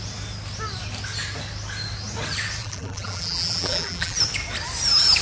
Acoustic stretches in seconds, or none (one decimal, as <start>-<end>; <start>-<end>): 0.0-2.6; 4.2-5.2

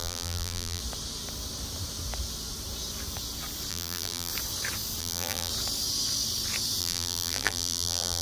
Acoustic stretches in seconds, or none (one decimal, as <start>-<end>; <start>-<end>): 0.8-3.7; 4.3-5.0; 5.5-6.8

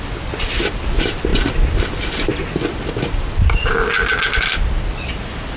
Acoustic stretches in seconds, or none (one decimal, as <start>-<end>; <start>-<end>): 0.0-5.6